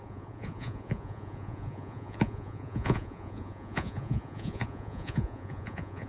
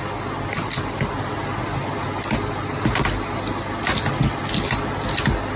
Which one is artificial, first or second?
first